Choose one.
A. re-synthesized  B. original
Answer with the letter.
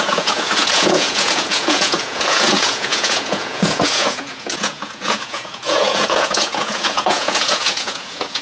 A